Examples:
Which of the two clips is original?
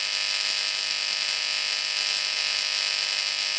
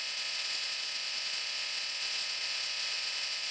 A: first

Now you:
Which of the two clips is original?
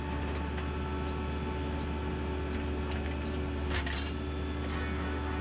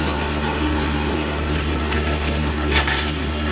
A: first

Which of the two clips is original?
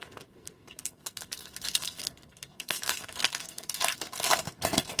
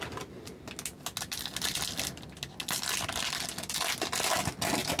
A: second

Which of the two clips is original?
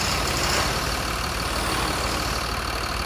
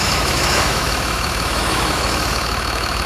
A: first